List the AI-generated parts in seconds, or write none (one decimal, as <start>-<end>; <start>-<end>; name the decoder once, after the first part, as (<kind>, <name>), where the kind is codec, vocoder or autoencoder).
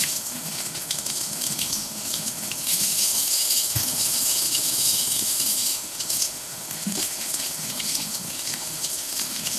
0.0-9.6 (autoencoder, DAC-VAE)